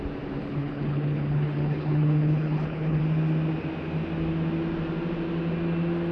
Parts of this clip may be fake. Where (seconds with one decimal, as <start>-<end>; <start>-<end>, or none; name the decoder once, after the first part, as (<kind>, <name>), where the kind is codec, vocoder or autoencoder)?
0.4-3.0 (codec, HILCodec)